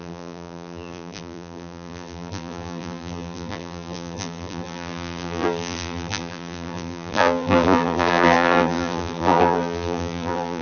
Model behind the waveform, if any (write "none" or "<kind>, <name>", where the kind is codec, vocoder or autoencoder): vocoder, BigVGAN v2